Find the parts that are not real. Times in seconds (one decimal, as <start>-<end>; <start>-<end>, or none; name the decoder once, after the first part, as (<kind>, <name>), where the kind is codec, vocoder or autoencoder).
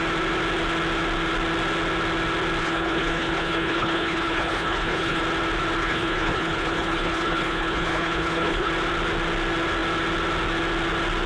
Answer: 2.6-5.2 (codec, HILCodec); 5.8-8.7